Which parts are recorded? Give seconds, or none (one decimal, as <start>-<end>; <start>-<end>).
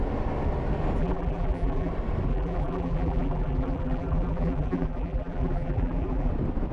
0.0-1.0; 1.9-2.3; 6.3-6.7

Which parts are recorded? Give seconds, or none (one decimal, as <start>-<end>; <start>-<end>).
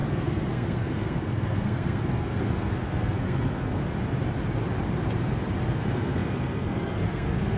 3.8-5.7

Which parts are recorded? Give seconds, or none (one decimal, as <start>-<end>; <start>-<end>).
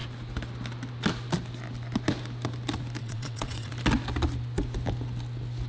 0.0-3.0; 3.7-5.7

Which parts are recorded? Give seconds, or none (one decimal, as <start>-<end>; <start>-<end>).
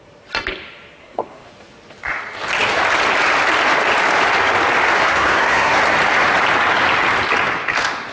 0.0-1.0; 1.5-5.0; 5.8-8.1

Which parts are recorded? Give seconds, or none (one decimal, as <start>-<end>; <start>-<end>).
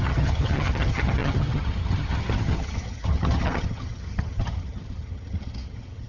none